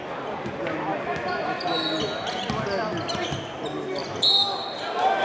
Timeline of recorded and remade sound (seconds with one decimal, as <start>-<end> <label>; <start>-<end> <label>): 0.0-5.2 recorded